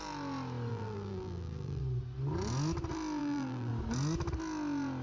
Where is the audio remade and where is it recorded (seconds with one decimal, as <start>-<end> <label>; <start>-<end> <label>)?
0.0-0.7 recorded; 0.7-1.8 remade; 1.8-3.2 recorded; 3.2-3.7 remade; 3.7-5.0 recorded